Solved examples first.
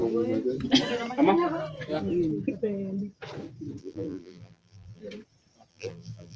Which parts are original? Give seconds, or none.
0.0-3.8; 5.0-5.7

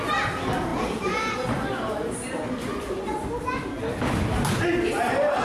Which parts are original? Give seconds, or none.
0.0-5.4

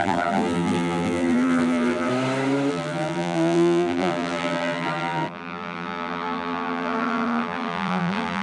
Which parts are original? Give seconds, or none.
2.1-2.7